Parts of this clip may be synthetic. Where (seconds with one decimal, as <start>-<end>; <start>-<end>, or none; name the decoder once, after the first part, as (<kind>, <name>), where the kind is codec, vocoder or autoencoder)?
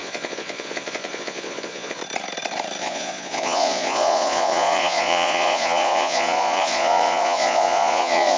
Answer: 0.0-2.0 (vocoder, Vocos); 2.8-8.4